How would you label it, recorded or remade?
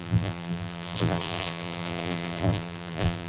remade